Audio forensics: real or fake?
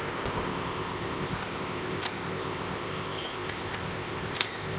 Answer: fake